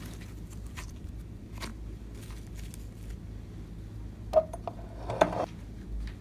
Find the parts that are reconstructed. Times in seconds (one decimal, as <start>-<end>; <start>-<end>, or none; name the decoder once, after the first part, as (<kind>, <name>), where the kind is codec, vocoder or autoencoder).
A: none